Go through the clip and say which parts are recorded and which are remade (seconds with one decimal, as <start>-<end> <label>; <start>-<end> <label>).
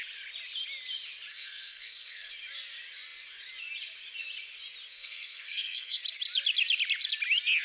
0.0-1.3 recorded; 1.3-2.3 remade; 2.3-4.9 recorded; 4.9-6.0 remade; 6.0-7.6 recorded